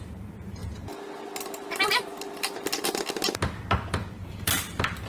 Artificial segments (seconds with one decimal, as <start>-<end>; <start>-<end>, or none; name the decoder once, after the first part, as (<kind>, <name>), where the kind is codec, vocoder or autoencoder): 0.0-0.6 (vocoder, BigVGAN v2); 3.7-5.1